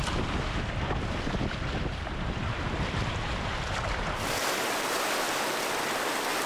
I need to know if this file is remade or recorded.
recorded